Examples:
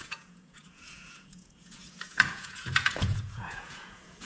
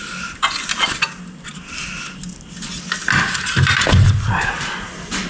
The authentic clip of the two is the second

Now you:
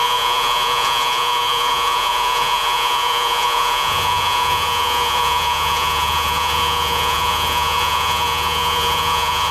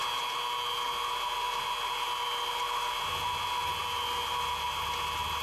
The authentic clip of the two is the second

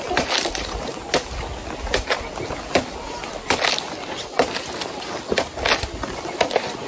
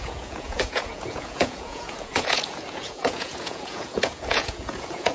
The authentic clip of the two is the first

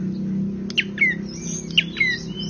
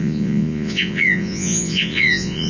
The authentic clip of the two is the first